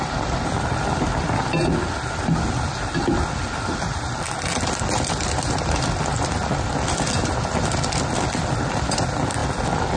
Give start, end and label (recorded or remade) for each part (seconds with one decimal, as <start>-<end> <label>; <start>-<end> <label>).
0.0-10.0 recorded